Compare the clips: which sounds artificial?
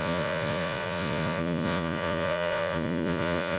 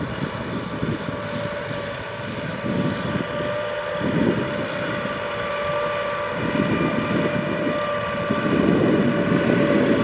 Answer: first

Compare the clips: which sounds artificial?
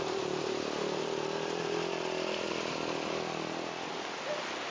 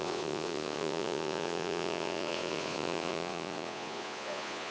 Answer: second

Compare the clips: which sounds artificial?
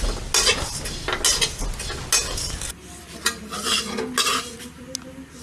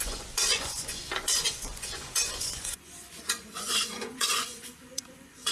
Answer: second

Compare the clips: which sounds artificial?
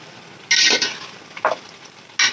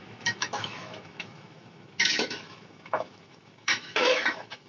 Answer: second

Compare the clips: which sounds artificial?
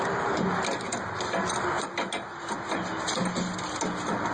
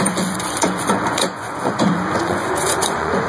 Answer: second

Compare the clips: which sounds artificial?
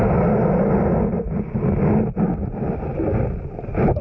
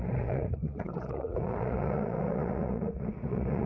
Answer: second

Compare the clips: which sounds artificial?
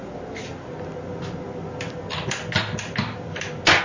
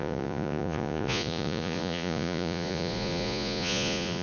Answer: second